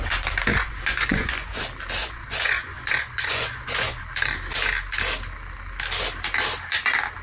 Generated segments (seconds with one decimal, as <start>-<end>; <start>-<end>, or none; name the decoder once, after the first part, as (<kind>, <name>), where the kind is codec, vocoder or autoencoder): 0.5-1.6 (vocoder, Vocos); 2.0-4.0